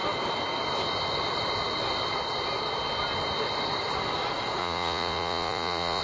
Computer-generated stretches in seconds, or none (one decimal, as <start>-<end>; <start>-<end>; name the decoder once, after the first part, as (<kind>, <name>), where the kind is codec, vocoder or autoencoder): 4.6-6.0 (vocoder, Vocos)